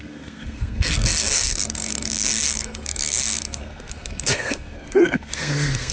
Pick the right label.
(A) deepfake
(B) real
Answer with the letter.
A